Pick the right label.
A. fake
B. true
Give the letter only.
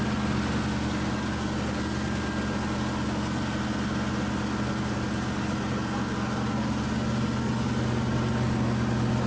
B